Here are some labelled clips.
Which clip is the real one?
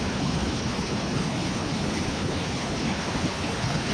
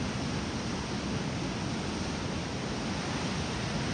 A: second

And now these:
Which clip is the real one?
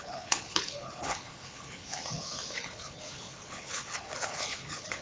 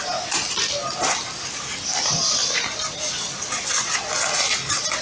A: second